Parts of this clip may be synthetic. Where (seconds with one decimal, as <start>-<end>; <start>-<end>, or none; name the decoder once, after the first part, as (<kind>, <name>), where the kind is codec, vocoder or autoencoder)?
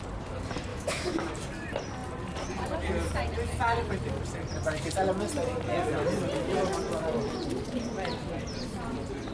0.7-1.3 (autoencoder, DAC-VAE)